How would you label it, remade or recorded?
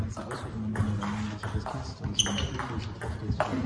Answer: recorded